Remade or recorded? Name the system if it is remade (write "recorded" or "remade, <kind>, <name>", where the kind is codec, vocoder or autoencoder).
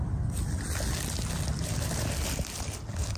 recorded